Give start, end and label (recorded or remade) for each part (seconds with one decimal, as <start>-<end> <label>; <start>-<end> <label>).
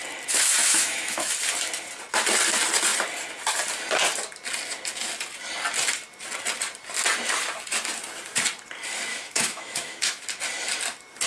0.0-0.6 recorded; 0.6-1.3 remade; 1.3-9.1 recorded; 9.1-10.2 remade; 10.2-11.3 recorded